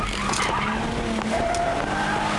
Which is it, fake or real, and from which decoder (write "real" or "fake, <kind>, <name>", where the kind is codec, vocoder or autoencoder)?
real